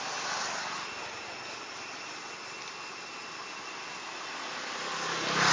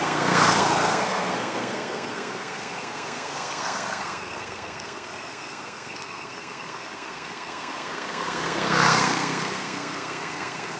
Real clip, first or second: first